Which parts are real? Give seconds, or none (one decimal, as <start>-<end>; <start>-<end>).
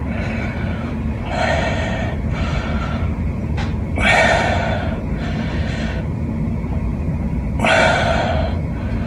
0.0-6.9; 7.5-9.1